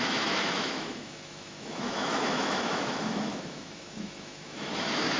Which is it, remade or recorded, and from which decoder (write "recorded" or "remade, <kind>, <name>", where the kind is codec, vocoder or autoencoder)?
remade, autoencoder, DAC-VAE